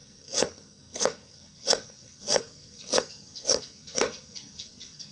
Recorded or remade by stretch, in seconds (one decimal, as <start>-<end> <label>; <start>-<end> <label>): 0.0-5.1 remade